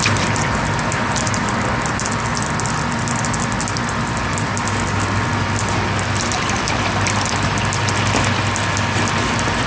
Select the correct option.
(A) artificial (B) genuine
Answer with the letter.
B